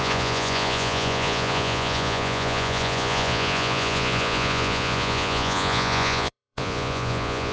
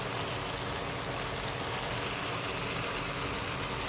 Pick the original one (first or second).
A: second